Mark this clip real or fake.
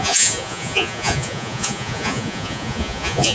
fake